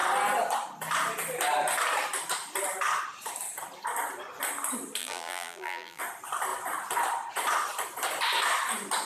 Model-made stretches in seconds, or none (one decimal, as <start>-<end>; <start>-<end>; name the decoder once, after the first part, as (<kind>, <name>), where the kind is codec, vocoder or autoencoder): 5.0-6.0 (vocoder, BigVGAN v2)